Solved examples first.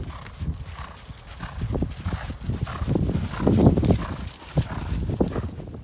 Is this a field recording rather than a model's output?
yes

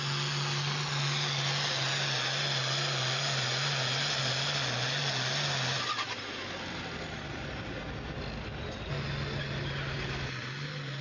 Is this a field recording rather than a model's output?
yes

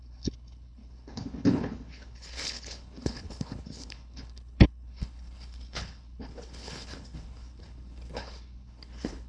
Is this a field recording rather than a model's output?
no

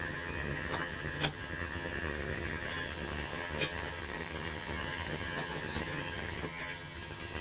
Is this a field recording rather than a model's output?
no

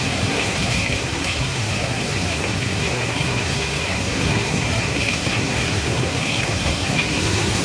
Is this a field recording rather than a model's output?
no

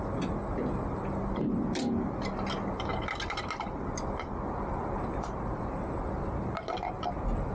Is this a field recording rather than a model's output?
yes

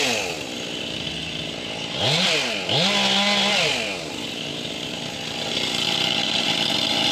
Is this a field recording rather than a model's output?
yes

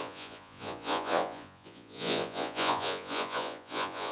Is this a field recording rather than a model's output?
no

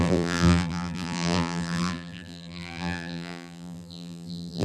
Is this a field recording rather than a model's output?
no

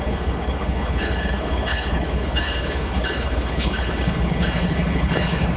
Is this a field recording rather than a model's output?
no